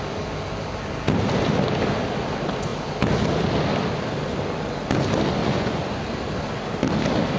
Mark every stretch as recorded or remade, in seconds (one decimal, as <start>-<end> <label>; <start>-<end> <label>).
0.0-5.4 recorded; 5.4-6.0 remade; 6.0-7.4 recorded